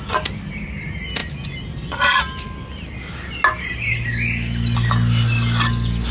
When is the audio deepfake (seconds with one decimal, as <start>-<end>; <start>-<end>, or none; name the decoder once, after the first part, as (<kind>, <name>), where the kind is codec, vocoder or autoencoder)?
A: none